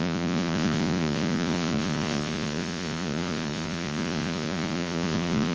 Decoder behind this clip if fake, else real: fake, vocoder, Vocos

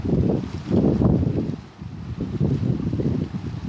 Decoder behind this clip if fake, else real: real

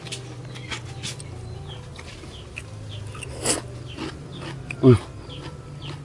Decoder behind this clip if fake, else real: real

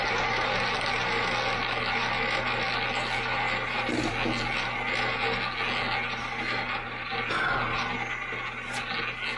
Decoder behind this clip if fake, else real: real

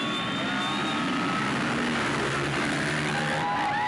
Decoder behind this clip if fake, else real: real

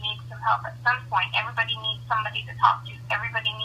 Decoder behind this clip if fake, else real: real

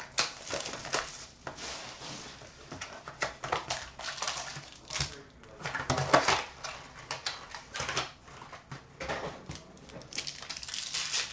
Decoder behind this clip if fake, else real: real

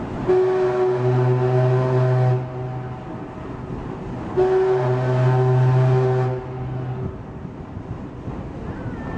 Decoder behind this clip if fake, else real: real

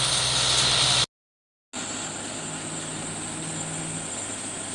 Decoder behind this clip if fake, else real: real